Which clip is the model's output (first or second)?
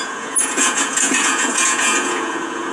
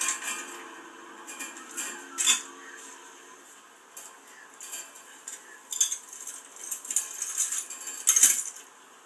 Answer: first